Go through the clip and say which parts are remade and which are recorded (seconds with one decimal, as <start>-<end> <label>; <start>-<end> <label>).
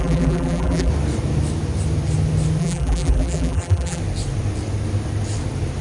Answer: 0.0-0.9 remade; 0.9-2.6 recorded; 2.6-4.0 remade; 4.0-5.8 recorded